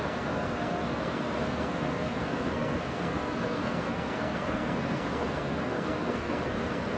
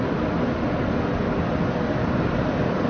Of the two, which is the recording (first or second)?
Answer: second